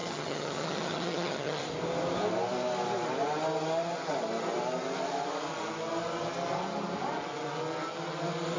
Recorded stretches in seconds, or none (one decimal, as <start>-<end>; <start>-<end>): 1.6-8.6